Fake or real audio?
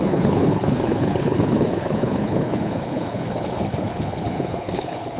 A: fake